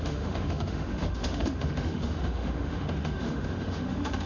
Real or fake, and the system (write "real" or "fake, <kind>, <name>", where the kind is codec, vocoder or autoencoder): fake, autoencoder, DAC-VAE